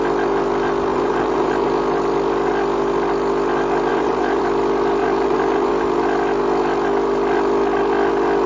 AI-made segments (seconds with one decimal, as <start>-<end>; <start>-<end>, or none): 0.9-1.7; 3.9-4.4; 5.0-5.7

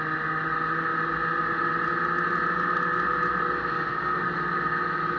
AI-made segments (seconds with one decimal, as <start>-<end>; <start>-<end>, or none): none

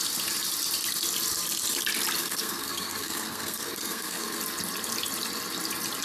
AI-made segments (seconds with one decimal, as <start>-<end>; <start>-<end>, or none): 2.2-4.4

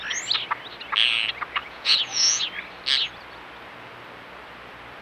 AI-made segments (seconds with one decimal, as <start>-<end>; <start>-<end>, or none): 1.6-2.4

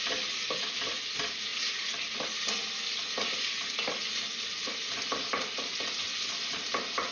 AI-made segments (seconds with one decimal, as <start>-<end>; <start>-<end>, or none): none

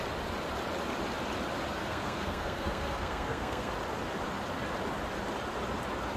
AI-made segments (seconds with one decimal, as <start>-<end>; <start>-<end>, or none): 1.8-3.7